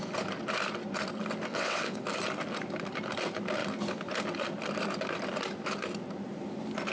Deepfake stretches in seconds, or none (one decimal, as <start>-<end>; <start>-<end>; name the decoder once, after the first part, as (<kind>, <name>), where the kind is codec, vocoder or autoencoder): 1.5-2.0 (vocoder, WaveNeXt)